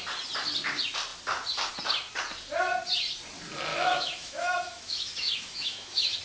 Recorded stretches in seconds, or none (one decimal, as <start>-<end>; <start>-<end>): 0.0-3.7

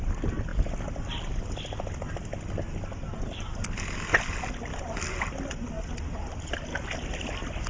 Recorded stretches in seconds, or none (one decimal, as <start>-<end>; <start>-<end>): 0.0-7.7

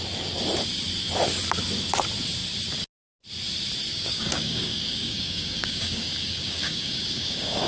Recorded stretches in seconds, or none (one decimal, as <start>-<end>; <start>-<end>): 0.0-3.9

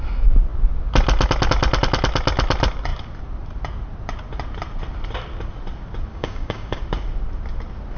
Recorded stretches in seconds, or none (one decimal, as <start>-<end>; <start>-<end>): 0.0-6.1; 6.8-8.0

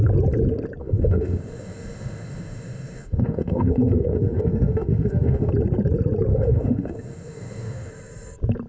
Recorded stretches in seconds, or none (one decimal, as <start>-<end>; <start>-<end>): 0.0-0.8; 5.5-6.3; 7.9-8.7

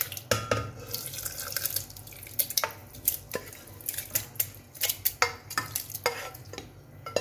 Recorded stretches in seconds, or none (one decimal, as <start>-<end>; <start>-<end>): 0.0-2.8; 3.8-7.2

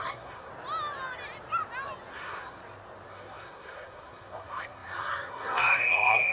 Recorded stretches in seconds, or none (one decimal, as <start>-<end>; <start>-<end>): 0.5-2.1; 2.6-3.1